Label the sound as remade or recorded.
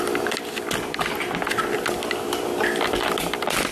recorded